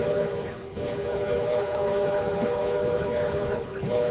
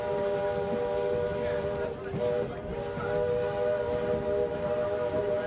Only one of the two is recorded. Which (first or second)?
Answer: second